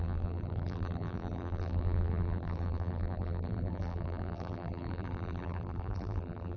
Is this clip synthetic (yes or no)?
yes